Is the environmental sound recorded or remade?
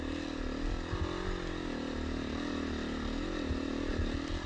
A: recorded